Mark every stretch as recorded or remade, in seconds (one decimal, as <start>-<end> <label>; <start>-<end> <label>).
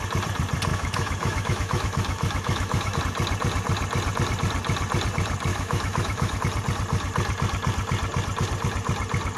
0.0-0.7 recorded; 0.7-3.0 remade; 3.0-5.5 recorded; 5.5-6.4 remade; 6.4-9.4 recorded